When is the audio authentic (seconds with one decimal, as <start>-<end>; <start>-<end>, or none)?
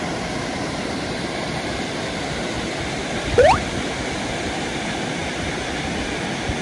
none